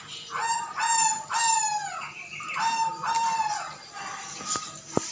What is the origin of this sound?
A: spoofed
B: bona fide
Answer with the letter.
B